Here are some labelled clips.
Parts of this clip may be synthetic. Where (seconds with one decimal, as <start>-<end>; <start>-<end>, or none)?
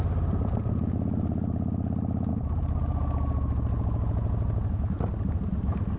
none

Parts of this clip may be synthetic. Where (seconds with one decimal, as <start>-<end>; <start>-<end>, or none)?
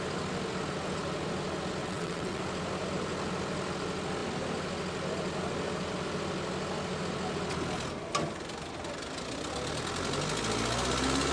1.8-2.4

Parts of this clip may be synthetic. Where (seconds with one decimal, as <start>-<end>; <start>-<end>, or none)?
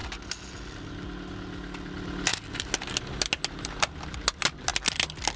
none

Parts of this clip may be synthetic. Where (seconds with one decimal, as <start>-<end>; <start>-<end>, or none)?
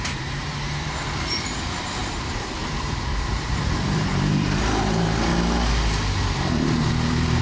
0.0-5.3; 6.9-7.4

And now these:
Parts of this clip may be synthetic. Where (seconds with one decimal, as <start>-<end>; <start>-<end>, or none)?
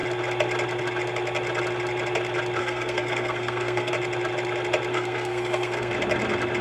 2.6-3.9; 4.9-5.9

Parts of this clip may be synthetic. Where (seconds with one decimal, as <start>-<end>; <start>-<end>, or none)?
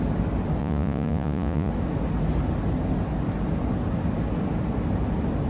0.6-1.7